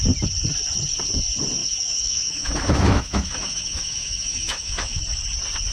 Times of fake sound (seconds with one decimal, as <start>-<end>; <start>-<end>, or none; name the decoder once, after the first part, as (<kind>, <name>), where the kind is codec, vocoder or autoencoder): 1.6-5.0 (autoencoder, DAC-VAE)

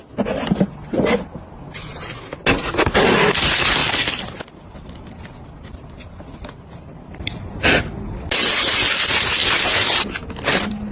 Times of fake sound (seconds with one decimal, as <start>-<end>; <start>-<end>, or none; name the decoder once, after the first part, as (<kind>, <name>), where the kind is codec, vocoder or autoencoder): 3.8-4.7 (vocoder, BigVGAN v2)

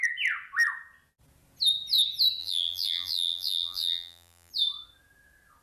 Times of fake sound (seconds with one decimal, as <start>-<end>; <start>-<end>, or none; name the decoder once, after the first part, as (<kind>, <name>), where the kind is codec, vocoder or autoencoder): 2.4-4.5 (vocoder, BigVGAN v2)

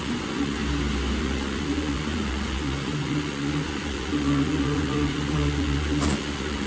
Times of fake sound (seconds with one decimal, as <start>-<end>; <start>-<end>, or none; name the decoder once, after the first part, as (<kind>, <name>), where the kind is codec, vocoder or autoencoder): 0.0-0.6 (vocoder, Vocos); 1.2-6.7

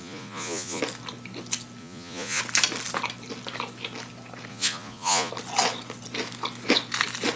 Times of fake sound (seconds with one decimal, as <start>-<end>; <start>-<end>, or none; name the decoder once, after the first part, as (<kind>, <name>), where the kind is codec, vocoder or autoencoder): 0.0-0.8 (vocoder, Vocos); 1.8-2.4; 4.5-5.3

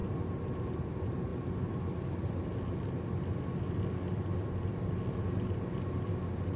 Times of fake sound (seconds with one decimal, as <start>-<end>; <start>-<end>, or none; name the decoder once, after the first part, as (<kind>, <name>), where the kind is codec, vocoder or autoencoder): none

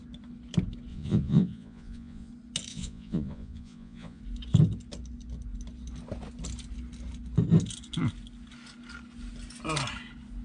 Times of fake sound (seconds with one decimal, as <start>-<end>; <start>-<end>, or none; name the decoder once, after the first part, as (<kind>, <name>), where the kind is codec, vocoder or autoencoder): 0.9-2.3 (vocoder, Vocos); 2.7-4.2

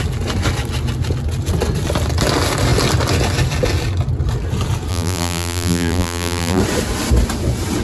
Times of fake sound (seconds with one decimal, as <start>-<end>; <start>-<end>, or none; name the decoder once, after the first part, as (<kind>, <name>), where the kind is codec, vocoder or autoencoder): 4.9-6.6 (vocoder, BigVGAN v2)